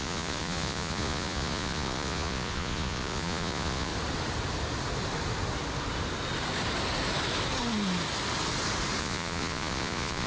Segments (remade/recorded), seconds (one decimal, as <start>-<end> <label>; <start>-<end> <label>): 0.0-3.9 remade; 3.9-9.0 recorded; 9.0-10.3 remade